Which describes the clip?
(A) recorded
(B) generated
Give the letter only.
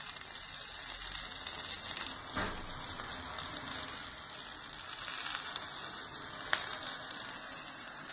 A